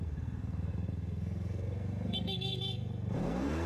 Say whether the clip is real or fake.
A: fake